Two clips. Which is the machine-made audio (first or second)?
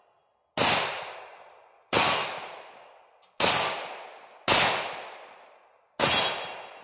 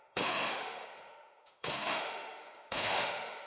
second